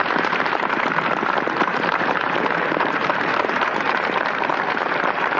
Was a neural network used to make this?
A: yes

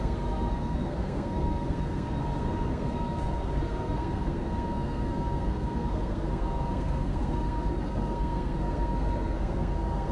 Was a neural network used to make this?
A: yes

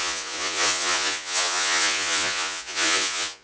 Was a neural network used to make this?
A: yes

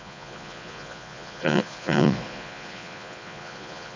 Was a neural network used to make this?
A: yes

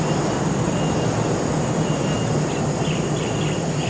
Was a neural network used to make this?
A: no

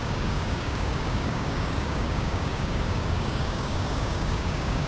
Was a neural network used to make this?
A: yes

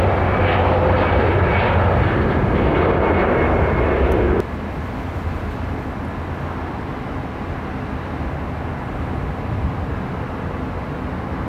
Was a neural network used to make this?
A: no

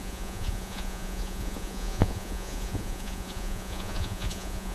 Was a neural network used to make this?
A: yes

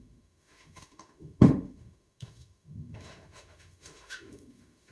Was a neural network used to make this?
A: yes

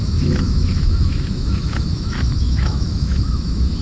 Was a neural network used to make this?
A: yes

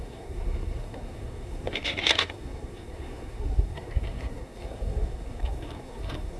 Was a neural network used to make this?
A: yes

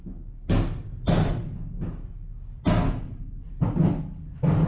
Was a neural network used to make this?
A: no